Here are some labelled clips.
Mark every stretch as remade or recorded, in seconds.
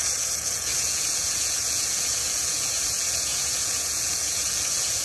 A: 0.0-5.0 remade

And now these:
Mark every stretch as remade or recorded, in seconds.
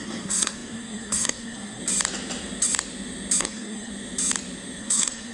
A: 0.0-1.8 remade; 1.8-3.4 recorded; 3.4-3.9 remade; 3.9-4.8 recorded; 4.8-5.3 remade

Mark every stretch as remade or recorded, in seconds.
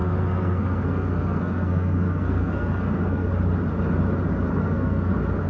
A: 0.0-3.3 remade; 3.3-4.6 recorded; 4.6-5.1 remade; 5.1-5.5 recorded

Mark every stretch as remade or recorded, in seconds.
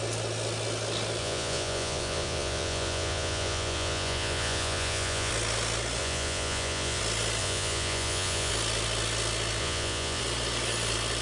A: 0.0-1.2 recorded; 1.2-5.3 remade; 5.3-6.0 recorded; 6.0-7.0 remade; 7.0-7.4 recorded; 7.4-8.5 remade; 8.5-9.6 recorded; 9.6-10.2 remade; 10.2-11.2 recorded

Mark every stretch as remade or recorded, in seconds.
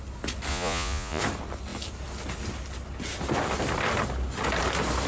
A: 0.0-0.5 recorded; 0.5-1.2 remade; 1.2-5.1 recorded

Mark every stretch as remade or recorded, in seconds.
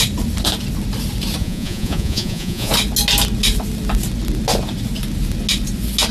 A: 0.0-1.4 recorded; 1.4-2.7 remade; 2.7-6.1 recorded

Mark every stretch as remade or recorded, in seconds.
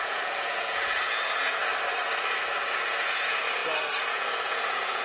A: 0.0-1.7 remade; 1.7-2.4 recorded; 2.4-3.6 remade; 3.6-4.1 recorded; 4.1-5.0 remade